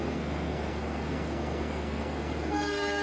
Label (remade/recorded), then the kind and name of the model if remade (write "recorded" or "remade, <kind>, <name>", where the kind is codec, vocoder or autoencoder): remade, codec, SNAC